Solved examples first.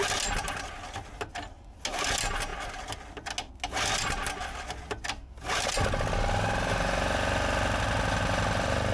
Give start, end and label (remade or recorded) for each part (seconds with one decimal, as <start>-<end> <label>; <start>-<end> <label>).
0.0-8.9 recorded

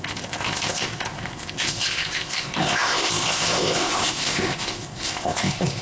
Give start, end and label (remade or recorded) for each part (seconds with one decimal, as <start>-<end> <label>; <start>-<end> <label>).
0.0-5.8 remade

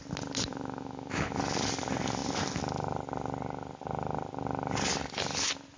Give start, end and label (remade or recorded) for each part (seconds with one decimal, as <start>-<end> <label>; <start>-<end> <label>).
0.0-0.5 recorded; 0.5-1.4 remade; 1.4-5.8 recorded

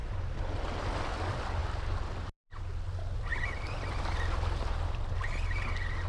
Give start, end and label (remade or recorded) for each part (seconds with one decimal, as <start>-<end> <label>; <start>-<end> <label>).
0.0-3.3 recorded; 3.3-4.0 remade; 4.0-6.1 recorded

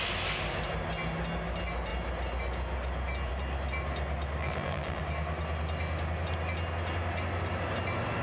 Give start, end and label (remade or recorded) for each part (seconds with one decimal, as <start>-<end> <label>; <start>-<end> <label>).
0.0-4.4 recorded; 4.4-5.0 remade; 5.0-8.2 recorded

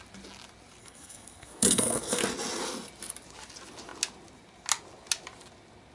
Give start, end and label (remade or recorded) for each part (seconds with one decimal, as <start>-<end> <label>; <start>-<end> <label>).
0.0-0.8 recorded; 0.8-2.2 remade; 2.2-5.9 recorded

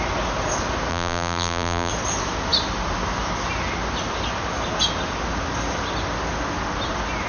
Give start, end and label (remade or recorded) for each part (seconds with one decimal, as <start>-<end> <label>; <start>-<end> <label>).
0.0-0.9 recorded; 0.9-1.9 remade; 1.9-7.3 recorded